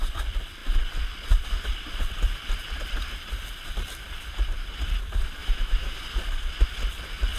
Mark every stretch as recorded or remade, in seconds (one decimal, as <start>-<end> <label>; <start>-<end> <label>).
0.0-5.4 recorded; 5.4-5.9 remade; 5.9-7.4 recorded